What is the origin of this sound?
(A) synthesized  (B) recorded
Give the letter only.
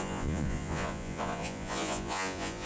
A